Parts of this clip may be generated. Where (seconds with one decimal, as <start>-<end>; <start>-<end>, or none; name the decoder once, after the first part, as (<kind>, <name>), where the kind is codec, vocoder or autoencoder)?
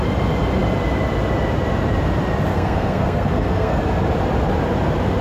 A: 2.5-3.8 (codec, SNAC)